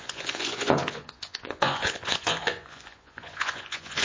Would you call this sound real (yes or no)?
no